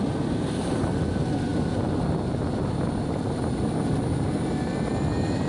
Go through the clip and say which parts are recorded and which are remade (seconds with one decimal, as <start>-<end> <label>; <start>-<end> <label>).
0.0-5.5 recorded